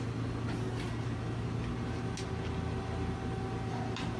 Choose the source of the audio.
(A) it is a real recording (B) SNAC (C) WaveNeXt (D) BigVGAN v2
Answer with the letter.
A